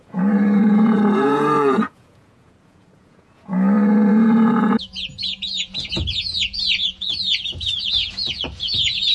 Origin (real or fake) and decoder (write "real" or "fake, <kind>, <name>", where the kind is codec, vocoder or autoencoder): fake, vocoder, Vocos